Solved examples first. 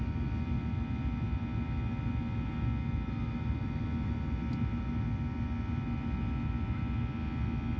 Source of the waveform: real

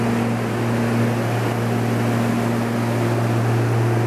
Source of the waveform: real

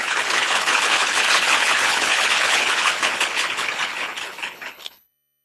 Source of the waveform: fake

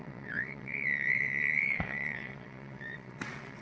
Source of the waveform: fake